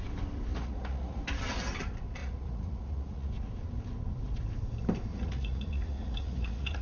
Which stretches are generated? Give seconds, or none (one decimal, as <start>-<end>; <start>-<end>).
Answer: 0.5-1.2; 2.2-3.3; 5.1-6.8